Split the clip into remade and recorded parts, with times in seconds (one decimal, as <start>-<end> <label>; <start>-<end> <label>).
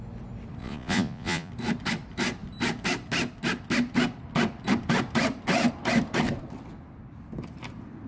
0.0-0.6 recorded; 0.6-1.5 remade; 1.5-8.1 recorded